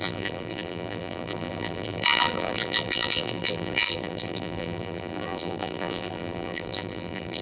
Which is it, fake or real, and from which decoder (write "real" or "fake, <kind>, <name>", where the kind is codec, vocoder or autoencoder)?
fake, vocoder, BigVGAN v2